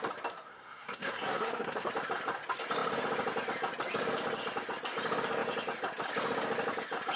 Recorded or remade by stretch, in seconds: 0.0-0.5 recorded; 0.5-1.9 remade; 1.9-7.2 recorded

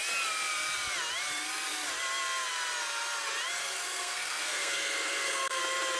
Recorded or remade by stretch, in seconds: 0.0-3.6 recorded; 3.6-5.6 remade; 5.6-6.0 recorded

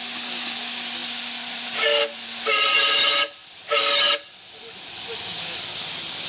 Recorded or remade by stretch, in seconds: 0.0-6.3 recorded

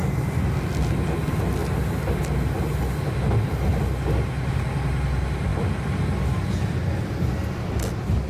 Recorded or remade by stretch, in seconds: 0.0-8.3 recorded

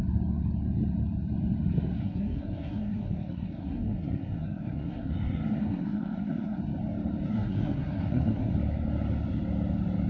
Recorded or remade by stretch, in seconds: 0.0-2.0 recorded; 2.0-6.6 remade; 6.6-7.3 recorded; 7.3-8.5 remade; 8.5-10.1 recorded

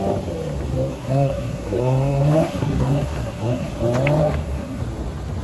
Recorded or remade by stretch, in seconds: 0.0-0.9 recorded; 0.9-3.7 remade; 3.7-4.2 recorded; 4.2-4.8 remade; 4.8-5.4 recorded